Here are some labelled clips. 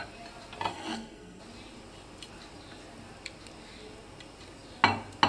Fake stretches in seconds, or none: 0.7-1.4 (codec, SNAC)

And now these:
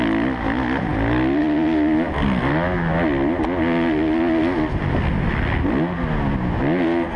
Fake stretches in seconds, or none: none